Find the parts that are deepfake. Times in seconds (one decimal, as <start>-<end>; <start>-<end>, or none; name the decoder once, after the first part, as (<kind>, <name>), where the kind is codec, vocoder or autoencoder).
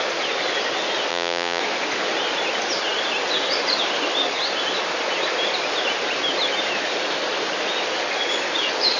1.1-1.6 (vocoder, Vocos)